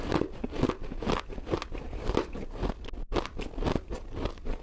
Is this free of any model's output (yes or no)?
yes